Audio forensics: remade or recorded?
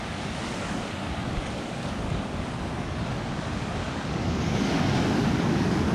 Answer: remade